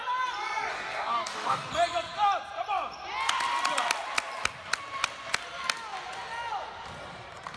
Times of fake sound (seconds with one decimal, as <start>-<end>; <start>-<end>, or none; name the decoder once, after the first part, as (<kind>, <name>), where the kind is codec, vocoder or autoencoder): 0.7-1.7 (codec, DAC)